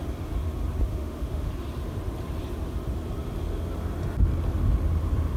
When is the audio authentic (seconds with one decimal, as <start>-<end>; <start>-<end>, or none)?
0.0-0.9; 1.5-5.4